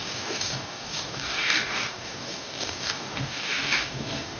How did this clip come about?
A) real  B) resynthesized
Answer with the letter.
B